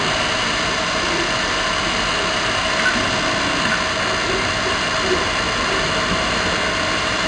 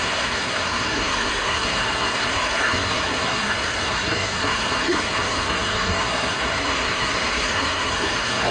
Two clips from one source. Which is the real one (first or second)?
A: first